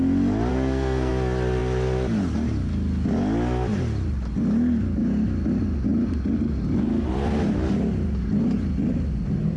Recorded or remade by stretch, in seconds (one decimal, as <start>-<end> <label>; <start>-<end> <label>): 0.0-0.5 recorded; 0.5-1.1 remade; 1.1-9.6 recorded